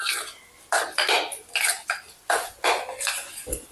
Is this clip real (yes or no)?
yes